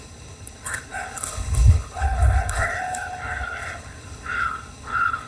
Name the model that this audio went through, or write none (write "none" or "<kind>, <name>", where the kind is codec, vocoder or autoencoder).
codec, HILCodec